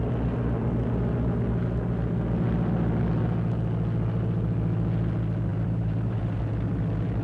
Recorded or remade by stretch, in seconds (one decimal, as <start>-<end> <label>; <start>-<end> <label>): 0.0-5.5 recorded; 5.5-6.4 remade; 6.4-7.2 recorded